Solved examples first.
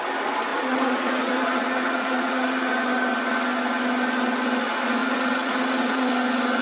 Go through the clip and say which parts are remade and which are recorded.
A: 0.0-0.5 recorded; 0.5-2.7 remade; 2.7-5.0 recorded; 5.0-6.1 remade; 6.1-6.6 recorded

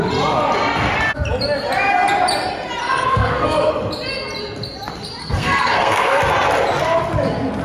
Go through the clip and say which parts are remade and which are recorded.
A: 0.0-2.8 recorded; 2.8-3.7 remade; 3.7-5.2 recorded; 5.2-6.2 remade; 6.2-7.6 recorded

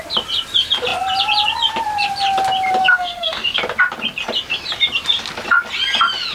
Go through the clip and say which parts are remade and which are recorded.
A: 0.0-2.8 recorded; 2.8-3.6 remade; 3.6-6.3 recorded

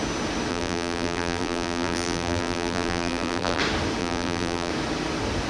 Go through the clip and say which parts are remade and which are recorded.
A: 0.0-0.5 recorded; 0.5-3.6 remade; 3.6-4.0 recorded; 4.0-4.7 remade; 4.7-5.5 recorded

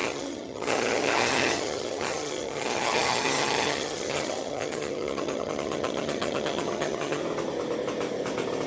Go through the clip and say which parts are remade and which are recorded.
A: 0.0-7.2 remade; 7.2-8.7 recorded

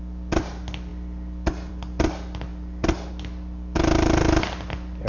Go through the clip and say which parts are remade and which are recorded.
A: 0.0-5.1 recorded